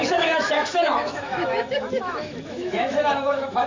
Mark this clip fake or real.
fake